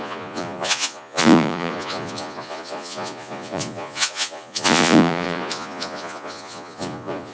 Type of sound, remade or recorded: remade